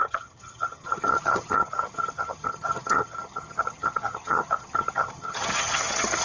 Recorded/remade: remade